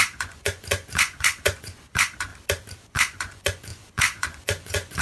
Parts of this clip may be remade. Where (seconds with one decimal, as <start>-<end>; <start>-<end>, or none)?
0.0-2.3; 2.8-5.0